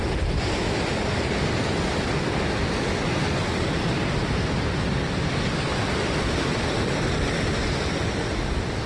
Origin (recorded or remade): recorded